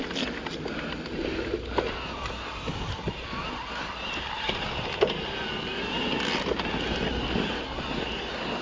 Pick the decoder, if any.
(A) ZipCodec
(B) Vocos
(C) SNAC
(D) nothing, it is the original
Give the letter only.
D